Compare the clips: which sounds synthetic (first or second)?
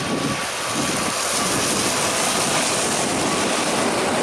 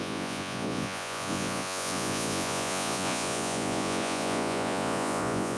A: second